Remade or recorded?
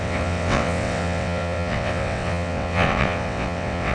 remade